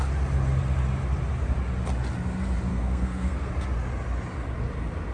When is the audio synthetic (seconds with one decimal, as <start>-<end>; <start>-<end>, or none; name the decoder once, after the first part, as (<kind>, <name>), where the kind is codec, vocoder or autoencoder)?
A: 2.7-3.5 (codec, SNAC)